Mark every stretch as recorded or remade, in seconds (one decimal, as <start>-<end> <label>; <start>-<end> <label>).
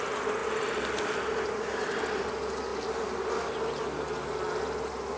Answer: 0.0-5.2 recorded